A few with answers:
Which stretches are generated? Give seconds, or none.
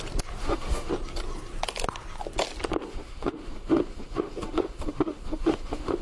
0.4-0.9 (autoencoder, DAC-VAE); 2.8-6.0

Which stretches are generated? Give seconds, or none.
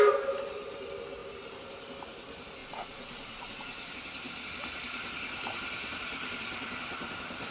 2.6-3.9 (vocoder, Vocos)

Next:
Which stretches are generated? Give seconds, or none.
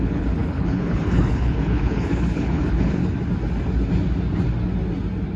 0.0-3.0 (codec, HILCodec)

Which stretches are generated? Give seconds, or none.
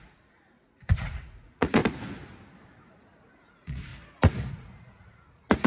0.0-1.8 (vocoder, Vocos); 2.6-3.9; 4.5-5.7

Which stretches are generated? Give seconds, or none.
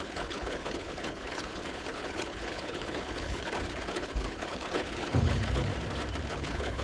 0.0-5.7 (codec, HILCodec); 6.3-6.8